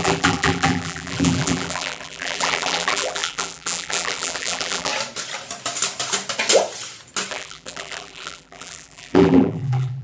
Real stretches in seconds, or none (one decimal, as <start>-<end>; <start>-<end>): 4.9-7.3